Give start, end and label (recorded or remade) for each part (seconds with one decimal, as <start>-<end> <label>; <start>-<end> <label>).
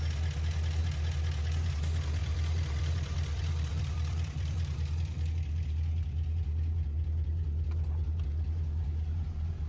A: 0.0-2.2 recorded; 2.2-5.3 remade; 5.3-9.7 recorded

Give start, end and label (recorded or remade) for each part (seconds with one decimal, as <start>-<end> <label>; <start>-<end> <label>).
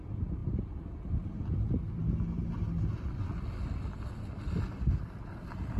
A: 0.0-0.4 remade; 0.4-1.2 recorded; 1.2-2.0 remade; 2.0-5.0 recorded; 5.0-5.8 remade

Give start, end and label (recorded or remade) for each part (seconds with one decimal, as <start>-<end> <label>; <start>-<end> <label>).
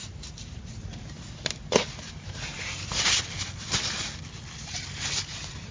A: 0.0-2.6 remade; 2.6-5.7 recorded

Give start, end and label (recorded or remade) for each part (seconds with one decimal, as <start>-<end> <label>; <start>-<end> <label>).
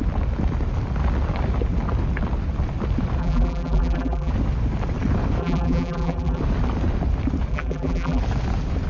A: 0.0-3.2 recorded; 3.2-4.3 remade; 4.3-5.4 recorded; 5.4-6.4 remade; 6.4-7.5 recorded; 7.5-8.2 remade; 8.2-8.9 recorded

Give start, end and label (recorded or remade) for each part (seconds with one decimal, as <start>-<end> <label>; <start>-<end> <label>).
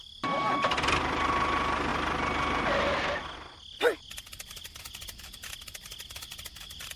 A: 0.0-7.0 recorded